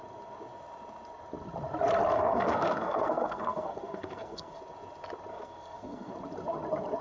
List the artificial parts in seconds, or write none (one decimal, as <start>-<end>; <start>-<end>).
2.1-4.6; 5.3-6.1